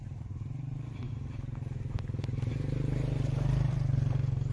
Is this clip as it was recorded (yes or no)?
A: no